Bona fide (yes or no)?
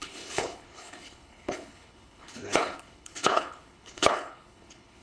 no